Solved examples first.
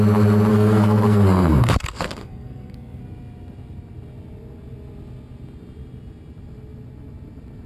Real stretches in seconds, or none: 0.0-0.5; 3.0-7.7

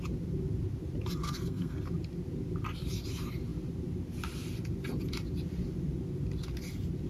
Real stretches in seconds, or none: 0.0-1.2; 1.8-7.1

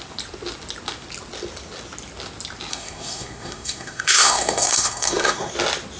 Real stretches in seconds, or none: 0.0-2.7; 5.5-6.0

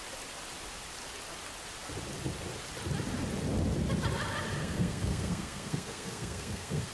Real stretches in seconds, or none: 0.0-4.6

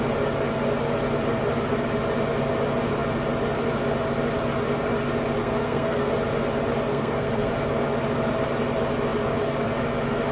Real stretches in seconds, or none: 0.0-5.4; 6.1-6.9; 7.5-10.3

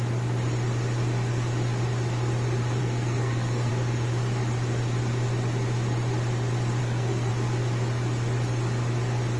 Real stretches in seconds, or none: 0.0-2.8; 3.7-6.8; 7.3-9.4

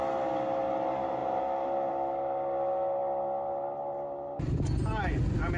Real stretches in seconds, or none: 0.0-5.6